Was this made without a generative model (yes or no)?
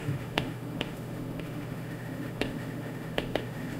no